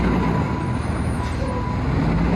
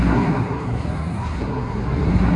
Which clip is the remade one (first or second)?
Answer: second